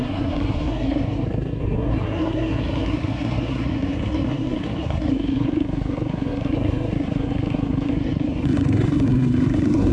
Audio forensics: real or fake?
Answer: fake